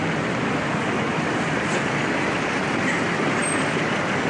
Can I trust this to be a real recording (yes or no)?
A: yes